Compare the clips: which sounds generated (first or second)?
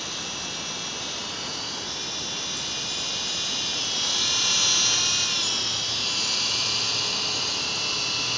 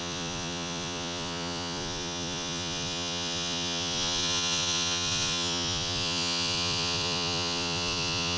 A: second